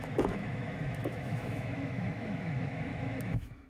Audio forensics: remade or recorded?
remade